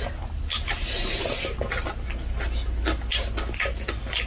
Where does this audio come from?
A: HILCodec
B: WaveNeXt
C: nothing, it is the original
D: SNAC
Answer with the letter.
C